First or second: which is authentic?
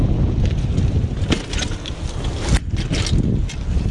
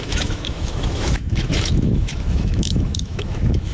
first